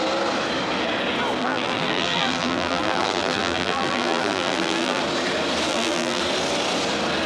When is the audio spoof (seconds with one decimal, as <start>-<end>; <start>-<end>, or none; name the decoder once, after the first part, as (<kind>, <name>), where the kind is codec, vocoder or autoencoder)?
1.4-5.0 (vocoder, BigVGAN v2); 5.7-6.2